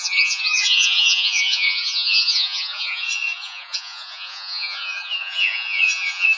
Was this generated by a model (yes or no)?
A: yes